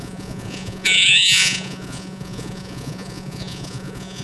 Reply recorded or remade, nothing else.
remade